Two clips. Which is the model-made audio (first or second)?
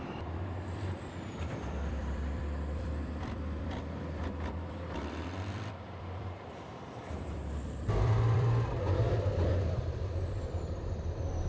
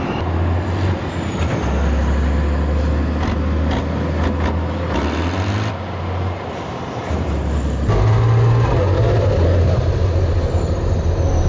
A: first